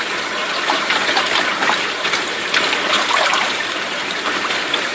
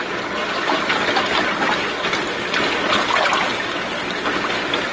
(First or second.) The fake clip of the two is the first